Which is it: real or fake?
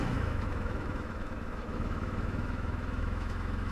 fake